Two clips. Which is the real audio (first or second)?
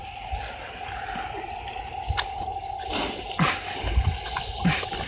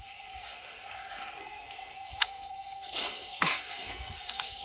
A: first